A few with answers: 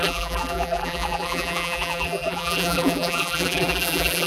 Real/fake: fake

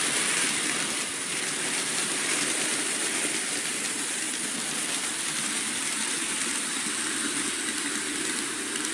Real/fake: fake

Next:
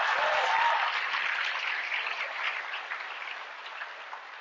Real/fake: fake